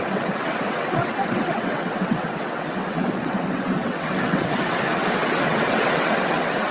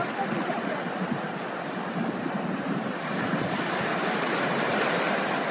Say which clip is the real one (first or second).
second